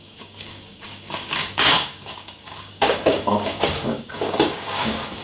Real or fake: fake